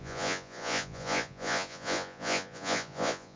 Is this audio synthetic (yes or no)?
yes